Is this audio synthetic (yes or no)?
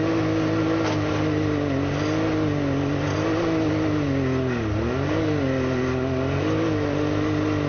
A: no